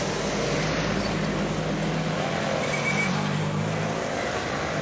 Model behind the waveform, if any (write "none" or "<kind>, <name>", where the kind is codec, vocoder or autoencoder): none